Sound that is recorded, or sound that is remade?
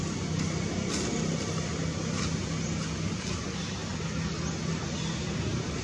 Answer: recorded